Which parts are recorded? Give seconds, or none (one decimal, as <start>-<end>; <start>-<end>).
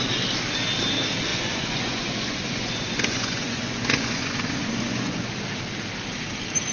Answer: 0.0-1.3; 5.3-6.7